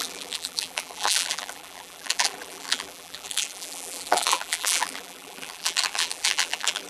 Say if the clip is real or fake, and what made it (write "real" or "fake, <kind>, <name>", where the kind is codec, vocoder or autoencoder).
fake, vocoder, BigVGAN v2